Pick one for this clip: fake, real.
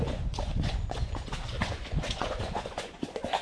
fake